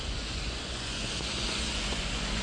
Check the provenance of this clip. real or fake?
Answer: fake